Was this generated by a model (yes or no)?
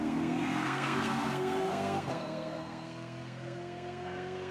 yes